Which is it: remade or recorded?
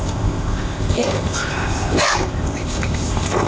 remade